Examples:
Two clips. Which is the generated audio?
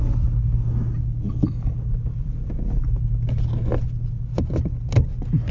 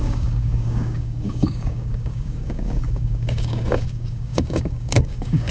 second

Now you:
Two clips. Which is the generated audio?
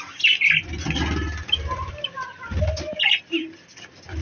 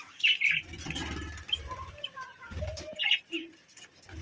second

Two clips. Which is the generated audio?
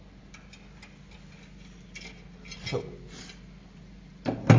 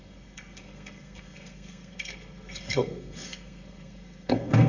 second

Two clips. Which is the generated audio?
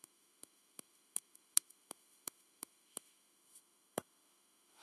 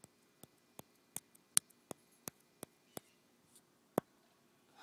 first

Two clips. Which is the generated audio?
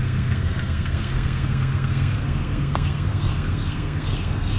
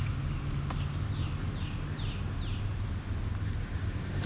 first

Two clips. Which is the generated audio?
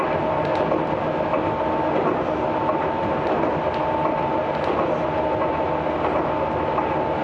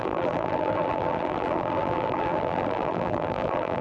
second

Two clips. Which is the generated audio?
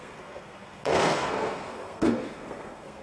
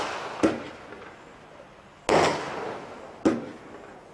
first